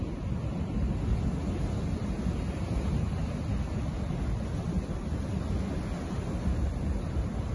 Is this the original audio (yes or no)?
yes